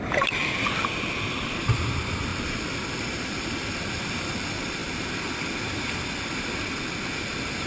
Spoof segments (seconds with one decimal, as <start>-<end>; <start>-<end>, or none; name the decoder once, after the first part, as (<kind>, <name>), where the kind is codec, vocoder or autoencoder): 0.0-0.4 (vocoder, BigVGAN v2); 1.6-2.3; 3.8-7.7